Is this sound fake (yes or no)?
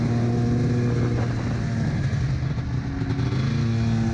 no